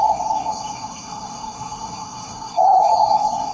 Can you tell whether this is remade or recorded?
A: remade